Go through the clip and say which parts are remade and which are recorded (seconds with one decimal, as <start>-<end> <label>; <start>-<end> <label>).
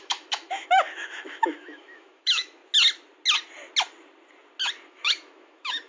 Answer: 0.0-2.6 remade; 2.6-4.9 recorded; 4.9-5.9 remade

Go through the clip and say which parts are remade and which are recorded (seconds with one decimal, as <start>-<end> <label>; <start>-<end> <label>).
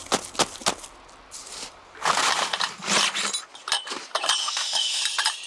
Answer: 0.0-4.4 recorded; 4.4-5.0 remade; 5.0-5.5 recorded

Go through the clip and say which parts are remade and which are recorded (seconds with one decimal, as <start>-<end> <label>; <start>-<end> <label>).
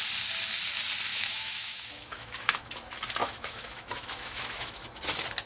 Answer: 0.0-1.1 recorded; 1.1-2.7 remade; 2.7-3.2 recorded; 3.2-4.8 remade; 4.8-5.5 recorded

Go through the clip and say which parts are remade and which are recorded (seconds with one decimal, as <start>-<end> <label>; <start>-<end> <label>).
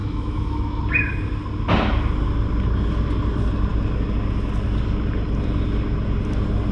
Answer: 0.0-0.8 remade; 0.8-6.7 recorded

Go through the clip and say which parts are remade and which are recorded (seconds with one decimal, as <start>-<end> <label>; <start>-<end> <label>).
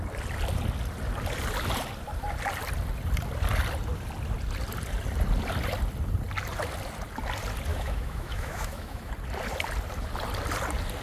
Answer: 0.0-7.7 recorded; 7.7-9.1 remade; 9.1-11.0 recorded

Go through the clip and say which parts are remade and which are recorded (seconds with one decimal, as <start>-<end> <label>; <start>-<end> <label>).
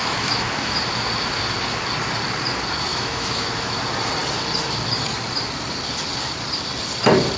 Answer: 0.0-0.8 remade; 0.8-2.9 recorded; 2.9-3.8 remade; 3.8-7.4 recorded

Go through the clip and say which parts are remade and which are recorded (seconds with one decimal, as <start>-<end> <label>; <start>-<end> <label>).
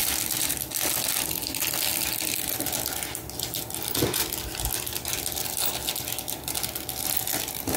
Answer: 0.0-7.8 recorded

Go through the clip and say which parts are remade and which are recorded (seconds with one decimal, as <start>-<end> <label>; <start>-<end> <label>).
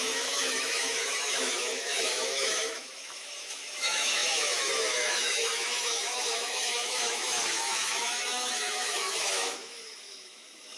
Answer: 0.0-10.8 remade